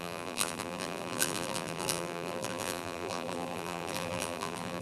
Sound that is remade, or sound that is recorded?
remade